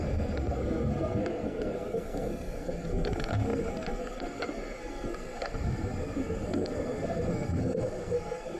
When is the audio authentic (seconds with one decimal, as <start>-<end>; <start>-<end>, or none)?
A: none